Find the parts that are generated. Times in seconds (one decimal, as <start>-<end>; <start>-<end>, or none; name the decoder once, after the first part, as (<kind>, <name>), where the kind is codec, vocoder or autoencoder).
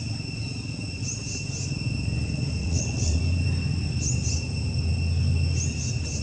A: 2.6-3.2 (vocoder, WaveNeXt)